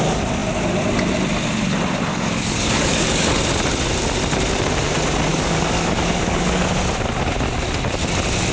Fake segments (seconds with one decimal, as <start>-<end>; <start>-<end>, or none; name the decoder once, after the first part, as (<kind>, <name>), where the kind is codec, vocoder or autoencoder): 2.1-3.3 (codec, DAC); 5.3-6.6